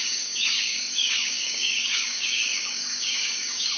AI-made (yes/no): yes